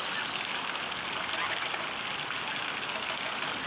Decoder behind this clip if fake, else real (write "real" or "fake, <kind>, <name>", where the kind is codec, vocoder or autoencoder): real